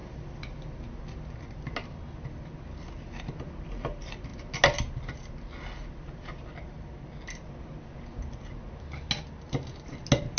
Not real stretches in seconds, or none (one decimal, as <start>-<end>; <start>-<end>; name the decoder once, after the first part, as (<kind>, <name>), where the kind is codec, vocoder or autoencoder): none